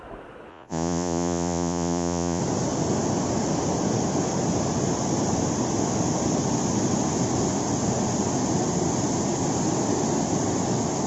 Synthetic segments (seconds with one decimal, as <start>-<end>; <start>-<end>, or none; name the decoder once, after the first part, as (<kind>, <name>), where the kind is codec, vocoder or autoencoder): 0.5-2.4 (vocoder, Vocos)